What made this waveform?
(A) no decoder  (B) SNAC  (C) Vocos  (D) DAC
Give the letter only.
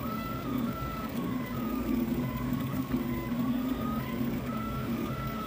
D